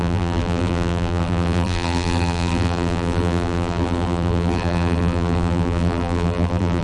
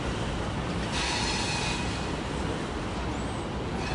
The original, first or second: second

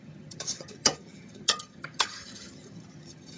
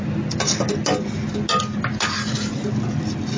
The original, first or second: second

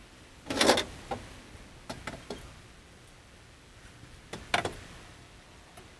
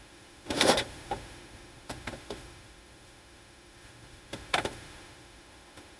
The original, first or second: first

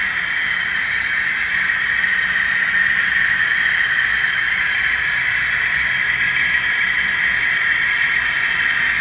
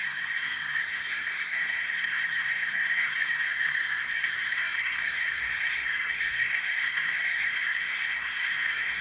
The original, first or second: first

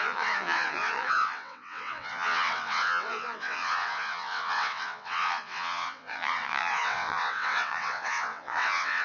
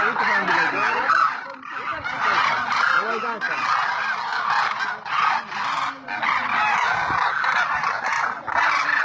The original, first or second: second